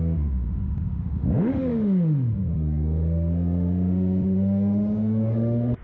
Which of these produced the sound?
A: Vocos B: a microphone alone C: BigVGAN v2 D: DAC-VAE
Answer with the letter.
D